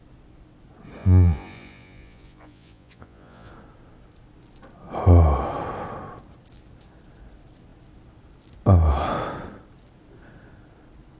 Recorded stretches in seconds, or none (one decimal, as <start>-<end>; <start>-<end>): 0.0-1.0; 3.5-11.2